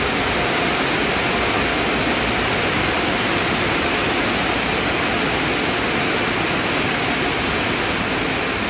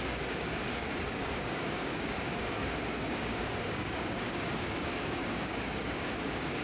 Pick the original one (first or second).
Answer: first